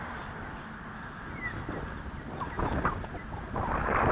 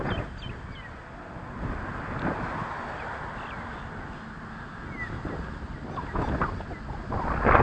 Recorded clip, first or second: second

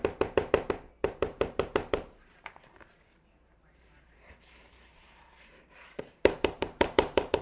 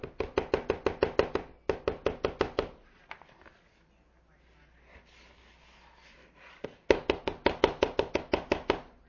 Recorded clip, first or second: second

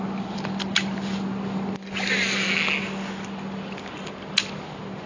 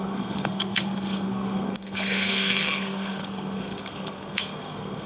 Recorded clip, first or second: first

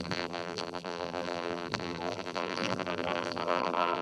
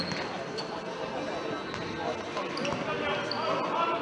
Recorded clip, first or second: second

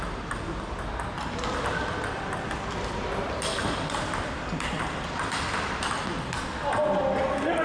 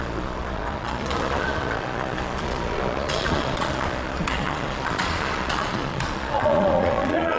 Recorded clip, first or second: first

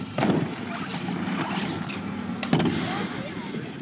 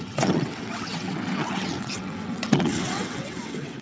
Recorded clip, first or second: first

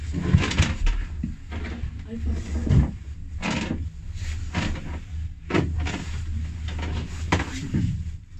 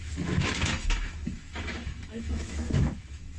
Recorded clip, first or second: first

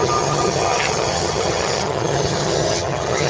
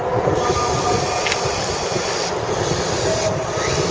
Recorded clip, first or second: second